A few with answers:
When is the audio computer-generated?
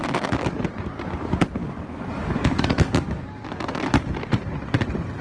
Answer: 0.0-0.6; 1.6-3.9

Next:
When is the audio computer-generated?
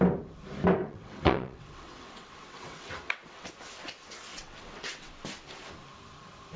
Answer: 0.8-3.5; 4.3-5.1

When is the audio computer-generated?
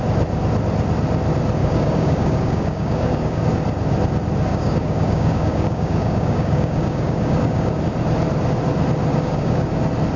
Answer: 1.6-3.4; 4.5-7.8; 9.1-9.7